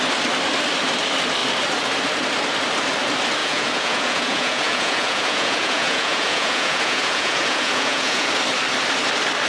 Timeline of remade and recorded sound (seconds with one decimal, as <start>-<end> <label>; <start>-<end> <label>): 0.0-3.4 recorded; 3.4-8.3 remade; 8.3-9.5 recorded